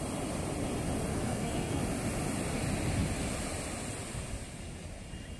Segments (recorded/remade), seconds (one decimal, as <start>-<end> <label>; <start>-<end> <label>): 0.0-1.1 recorded; 1.1-1.8 remade; 1.8-5.4 recorded